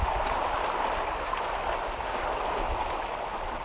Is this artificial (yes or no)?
no